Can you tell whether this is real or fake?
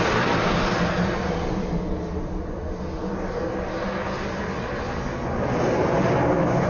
real